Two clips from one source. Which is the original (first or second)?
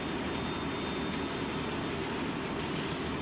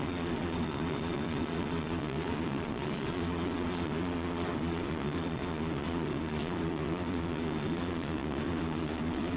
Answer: first